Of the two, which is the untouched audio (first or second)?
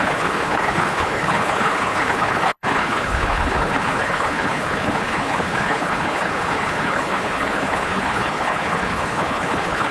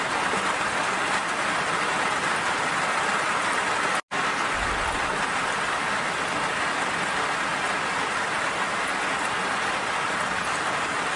second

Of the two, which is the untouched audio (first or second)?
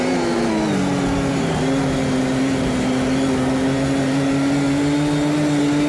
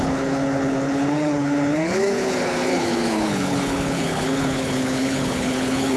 first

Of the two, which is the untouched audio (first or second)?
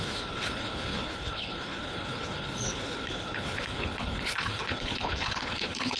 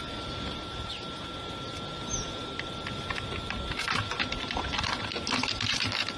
second